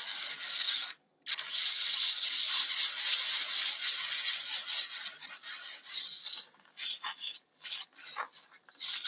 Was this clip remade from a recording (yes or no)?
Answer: no